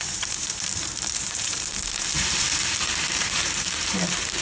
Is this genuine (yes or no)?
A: no